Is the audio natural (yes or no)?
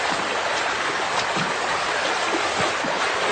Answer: yes